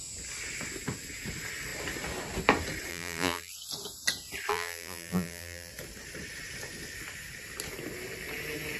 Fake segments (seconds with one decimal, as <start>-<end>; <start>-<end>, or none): 2.9-3.5; 4.5-5.7